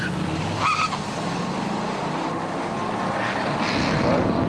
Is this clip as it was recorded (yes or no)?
yes